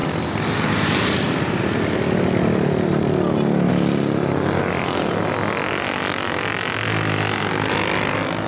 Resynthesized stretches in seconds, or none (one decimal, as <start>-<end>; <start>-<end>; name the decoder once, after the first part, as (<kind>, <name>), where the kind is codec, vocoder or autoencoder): none